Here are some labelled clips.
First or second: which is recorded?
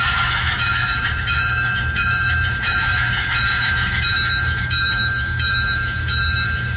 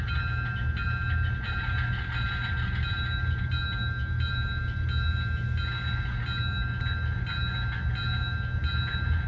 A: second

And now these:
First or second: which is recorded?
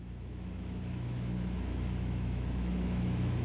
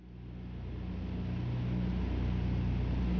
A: second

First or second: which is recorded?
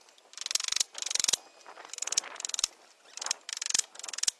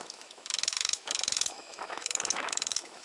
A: first